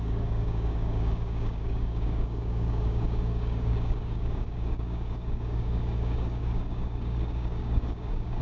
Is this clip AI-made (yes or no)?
yes